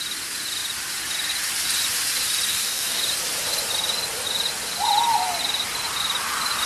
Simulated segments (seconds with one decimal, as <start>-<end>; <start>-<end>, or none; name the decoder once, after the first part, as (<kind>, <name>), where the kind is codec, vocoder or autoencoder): 2.5-3.0 (codec, DAC)